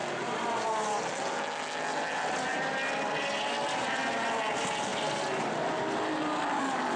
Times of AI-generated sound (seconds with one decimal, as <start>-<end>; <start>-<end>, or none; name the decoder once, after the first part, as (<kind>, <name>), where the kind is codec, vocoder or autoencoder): none